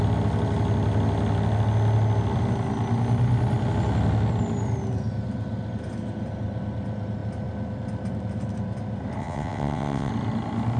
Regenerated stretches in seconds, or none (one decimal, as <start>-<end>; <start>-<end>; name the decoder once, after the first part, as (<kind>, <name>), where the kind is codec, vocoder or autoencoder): 9.2-10.1 (vocoder, WaveNeXt)